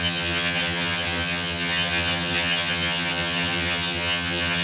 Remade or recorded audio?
remade